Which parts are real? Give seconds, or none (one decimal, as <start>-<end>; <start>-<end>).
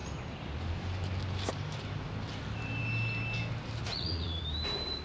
0.0-3.8; 4.4-5.0